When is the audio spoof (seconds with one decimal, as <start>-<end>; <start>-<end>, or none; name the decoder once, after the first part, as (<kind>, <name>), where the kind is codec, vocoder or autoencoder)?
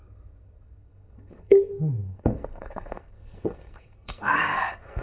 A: 0.0-5.0 (codec, SNAC)